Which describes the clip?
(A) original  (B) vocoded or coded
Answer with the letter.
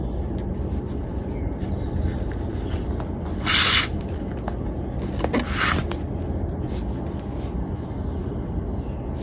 A